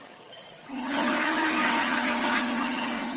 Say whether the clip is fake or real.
fake